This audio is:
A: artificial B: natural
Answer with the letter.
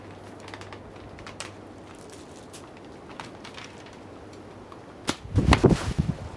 B